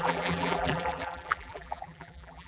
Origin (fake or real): fake